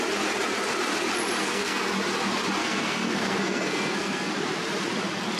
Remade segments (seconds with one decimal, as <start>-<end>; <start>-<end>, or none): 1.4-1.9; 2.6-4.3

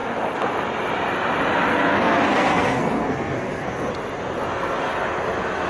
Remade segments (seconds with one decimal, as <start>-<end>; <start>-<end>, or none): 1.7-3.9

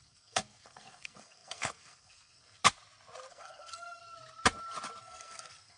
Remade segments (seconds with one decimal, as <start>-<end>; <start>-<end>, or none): 0.0-2.6; 3.3-4.0; 5.0-5.8

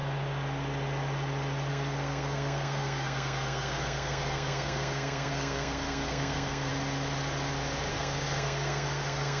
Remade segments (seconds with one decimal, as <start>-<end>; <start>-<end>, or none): 1.7-6.7; 7.9-9.4

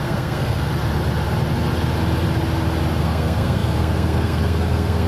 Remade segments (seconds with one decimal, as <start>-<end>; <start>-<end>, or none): 0.0-0.7; 3.0-5.1